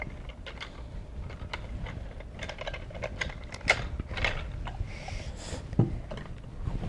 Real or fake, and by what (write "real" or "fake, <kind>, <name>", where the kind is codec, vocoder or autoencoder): real